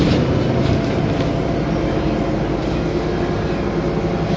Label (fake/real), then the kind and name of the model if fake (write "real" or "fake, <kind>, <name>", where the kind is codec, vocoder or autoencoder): real